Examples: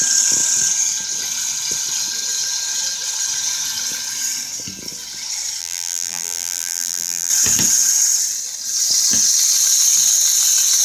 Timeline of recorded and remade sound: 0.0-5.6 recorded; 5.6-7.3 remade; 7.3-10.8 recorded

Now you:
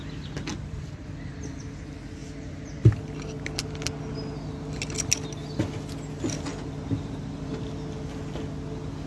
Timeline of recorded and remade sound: 0.0-0.5 recorded; 0.5-1.6 remade; 1.6-6.5 recorded; 6.5-7.5 remade; 7.5-9.1 recorded

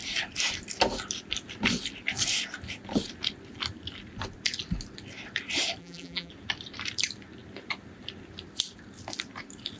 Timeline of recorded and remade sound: 0.0-5.8 recorded; 5.8-6.3 remade; 6.3-9.8 recorded

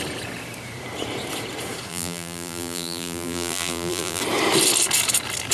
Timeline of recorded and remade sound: 0.0-1.9 recorded; 1.9-4.2 remade; 4.2-5.5 recorded